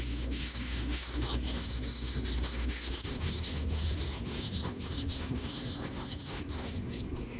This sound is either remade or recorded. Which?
remade